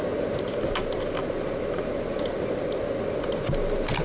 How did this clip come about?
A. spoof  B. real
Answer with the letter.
B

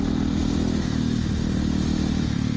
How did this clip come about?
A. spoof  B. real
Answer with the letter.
B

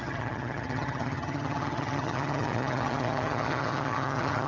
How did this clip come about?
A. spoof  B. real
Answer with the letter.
A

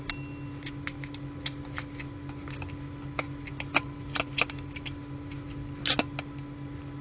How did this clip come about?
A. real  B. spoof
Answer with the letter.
A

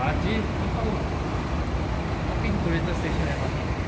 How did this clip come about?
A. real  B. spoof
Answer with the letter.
A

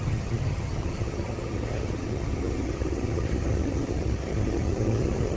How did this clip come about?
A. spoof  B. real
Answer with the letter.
A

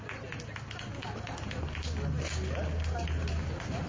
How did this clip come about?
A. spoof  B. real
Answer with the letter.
B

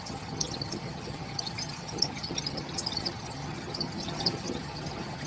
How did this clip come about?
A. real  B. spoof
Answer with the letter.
B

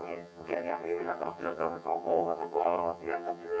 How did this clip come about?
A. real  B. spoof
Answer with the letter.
B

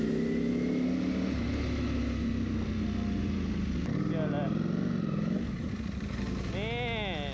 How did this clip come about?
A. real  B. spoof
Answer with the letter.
A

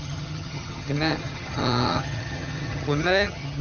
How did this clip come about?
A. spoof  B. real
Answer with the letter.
A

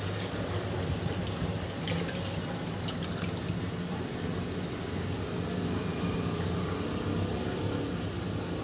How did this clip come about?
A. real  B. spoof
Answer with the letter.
A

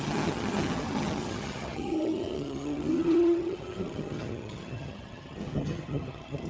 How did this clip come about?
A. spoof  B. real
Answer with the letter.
A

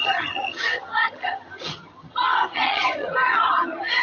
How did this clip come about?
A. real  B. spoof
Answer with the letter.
B